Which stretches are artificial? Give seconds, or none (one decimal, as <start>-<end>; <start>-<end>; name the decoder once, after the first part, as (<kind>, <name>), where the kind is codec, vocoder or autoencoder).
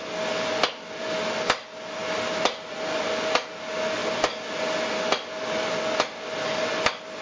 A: 4.0-6.7 (vocoder, BigVGAN v2)